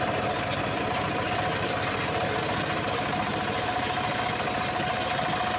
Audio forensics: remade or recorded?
recorded